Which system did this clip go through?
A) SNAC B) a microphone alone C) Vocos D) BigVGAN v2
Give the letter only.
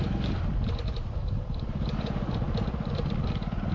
B